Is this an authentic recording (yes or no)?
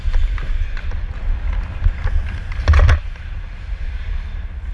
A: yes